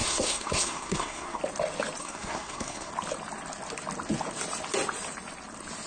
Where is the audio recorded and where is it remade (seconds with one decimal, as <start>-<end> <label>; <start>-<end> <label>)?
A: 0.0-1.4 remade; 1.4-2.0 recorded; 2.0-2.9 remade; 2.9-5.9 recorded